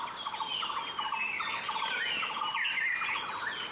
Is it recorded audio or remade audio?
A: recorded